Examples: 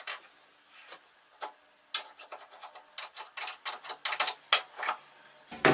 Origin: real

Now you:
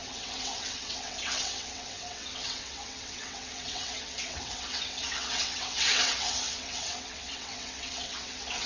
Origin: fake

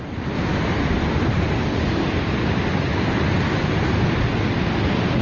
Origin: real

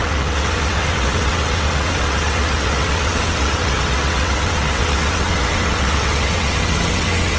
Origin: fake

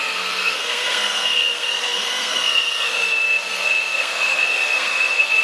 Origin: fake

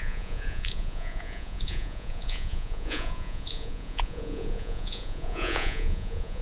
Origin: fake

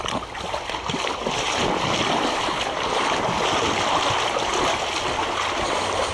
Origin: real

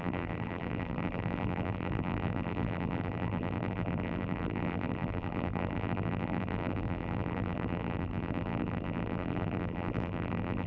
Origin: fake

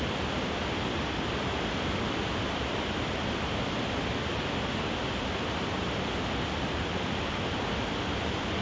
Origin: real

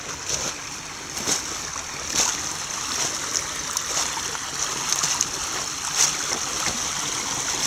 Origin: real